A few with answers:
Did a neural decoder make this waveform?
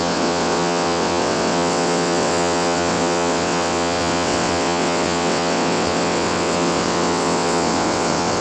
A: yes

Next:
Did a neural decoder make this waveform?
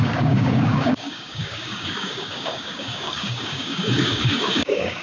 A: yes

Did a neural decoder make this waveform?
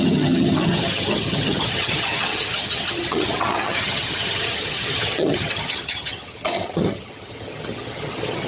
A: yes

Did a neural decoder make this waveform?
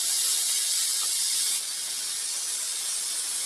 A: no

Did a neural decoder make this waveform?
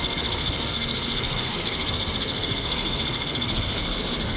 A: yes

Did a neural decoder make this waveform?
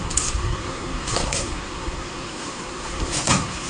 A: yes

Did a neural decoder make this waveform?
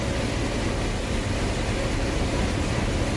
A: no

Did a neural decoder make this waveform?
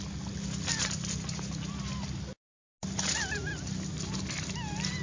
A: no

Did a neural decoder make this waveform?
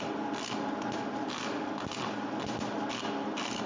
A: no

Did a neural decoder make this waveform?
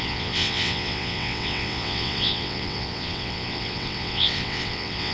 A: yes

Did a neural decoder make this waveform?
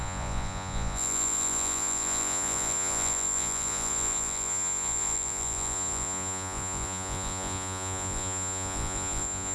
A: yes